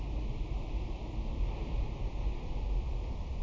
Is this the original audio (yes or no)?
yes